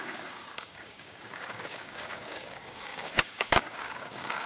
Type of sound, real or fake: fake